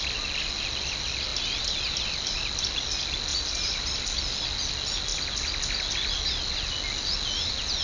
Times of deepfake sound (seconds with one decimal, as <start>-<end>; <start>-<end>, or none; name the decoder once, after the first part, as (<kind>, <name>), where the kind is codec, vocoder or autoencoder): 3.3-4.2 (vocoder, BigVGAN v2)